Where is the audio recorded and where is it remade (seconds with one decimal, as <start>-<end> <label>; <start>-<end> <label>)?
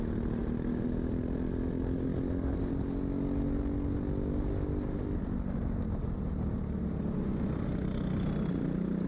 0.0-9.1 recorded